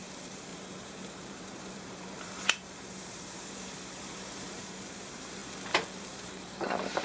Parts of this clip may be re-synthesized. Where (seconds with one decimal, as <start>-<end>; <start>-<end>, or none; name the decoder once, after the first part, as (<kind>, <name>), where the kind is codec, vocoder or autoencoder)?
0.0-5.4 (vocoder, BigVGAN v2); 6.0-7.0